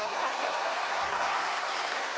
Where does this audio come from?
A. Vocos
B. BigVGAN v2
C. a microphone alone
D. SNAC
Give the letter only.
D